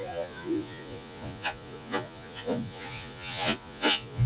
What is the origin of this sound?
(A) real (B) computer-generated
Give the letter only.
B